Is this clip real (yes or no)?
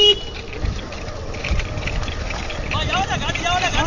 yes